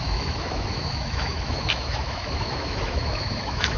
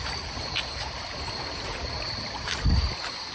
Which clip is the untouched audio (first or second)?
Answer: second